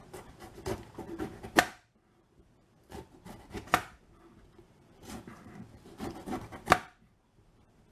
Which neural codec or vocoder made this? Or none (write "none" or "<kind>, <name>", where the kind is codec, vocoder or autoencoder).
vocoder, BigVGAN v2